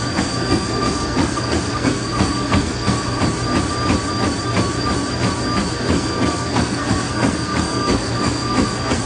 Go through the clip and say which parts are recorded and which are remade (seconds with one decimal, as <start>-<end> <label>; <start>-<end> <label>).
0.0-3.2 remade; 3.2-5.7 recorded; 5.7-9.1 remade